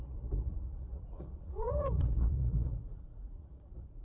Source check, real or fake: fake